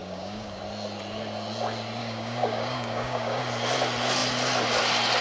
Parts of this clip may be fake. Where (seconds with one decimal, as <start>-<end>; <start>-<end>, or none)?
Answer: 0.0-0.6; 2.0-3.4